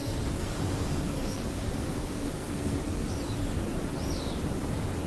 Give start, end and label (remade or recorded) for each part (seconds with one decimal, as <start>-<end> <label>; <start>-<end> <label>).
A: 0.0-3.1 remade; 3.1-5.1 recorded